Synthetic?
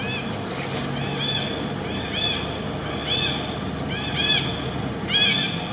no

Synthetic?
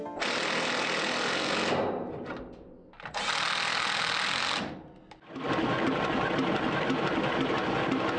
no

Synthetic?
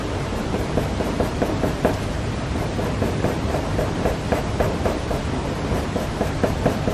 yes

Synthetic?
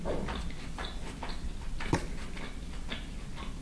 no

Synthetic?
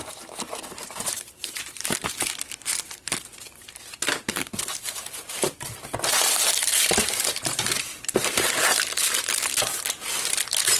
yes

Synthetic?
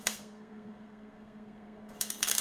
yes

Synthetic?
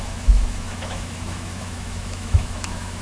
yes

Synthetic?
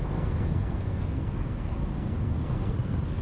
yes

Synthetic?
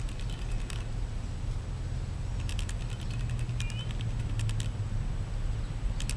no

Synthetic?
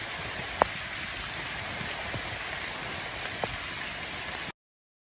no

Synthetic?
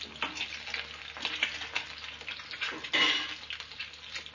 no